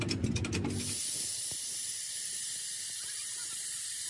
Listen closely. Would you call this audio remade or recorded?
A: recorded